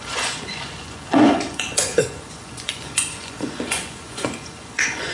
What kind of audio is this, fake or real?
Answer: fake